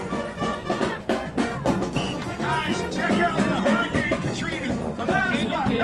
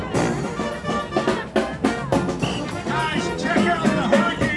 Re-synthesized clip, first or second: first